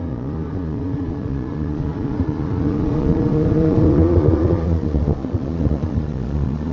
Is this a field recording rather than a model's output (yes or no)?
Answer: no